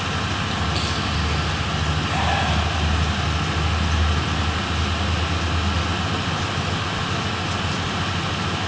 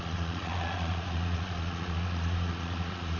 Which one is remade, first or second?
second